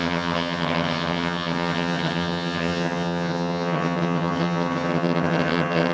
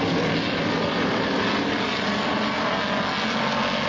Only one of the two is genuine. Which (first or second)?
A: second